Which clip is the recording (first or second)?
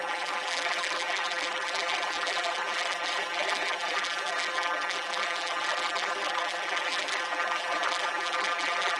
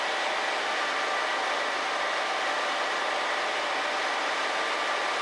second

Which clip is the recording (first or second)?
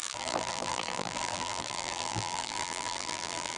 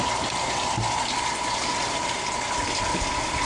second